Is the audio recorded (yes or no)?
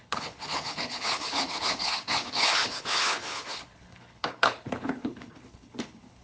no